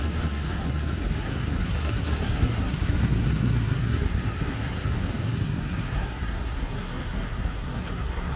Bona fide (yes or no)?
no